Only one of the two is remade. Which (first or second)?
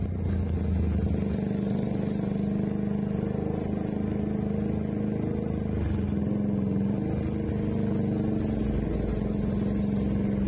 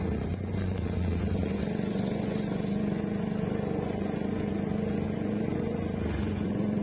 second